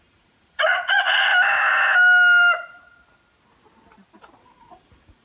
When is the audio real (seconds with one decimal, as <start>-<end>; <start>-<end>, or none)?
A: 1.3-4.4